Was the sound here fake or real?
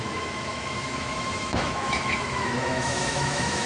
fake